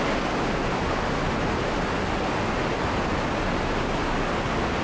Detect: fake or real real